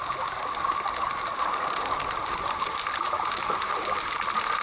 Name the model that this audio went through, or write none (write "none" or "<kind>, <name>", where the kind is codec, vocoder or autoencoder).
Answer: none